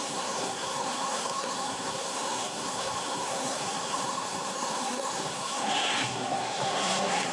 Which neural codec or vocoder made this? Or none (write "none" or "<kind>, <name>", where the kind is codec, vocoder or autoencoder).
codec, SNAC